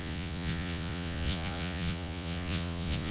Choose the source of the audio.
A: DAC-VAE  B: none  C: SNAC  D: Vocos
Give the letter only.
D